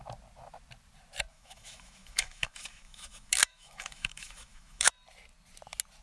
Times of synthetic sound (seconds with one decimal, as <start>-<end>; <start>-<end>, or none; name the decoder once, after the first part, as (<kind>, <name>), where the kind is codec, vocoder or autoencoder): 1.3-4.9 (autoencoder, DAC-VAE)